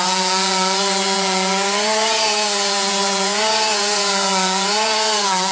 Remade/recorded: remade